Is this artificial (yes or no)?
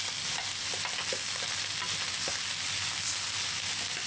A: no